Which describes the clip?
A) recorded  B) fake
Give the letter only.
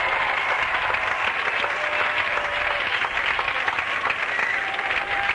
A